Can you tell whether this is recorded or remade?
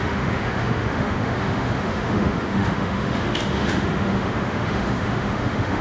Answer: remade